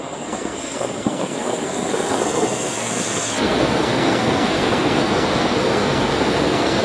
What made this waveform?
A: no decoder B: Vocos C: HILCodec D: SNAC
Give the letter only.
D